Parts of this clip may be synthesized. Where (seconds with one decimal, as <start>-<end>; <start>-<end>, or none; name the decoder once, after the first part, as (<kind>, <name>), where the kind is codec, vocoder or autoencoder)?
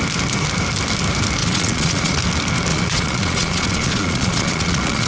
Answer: 1.4-2.2 (vocoder, Vocos); 2.7-5.1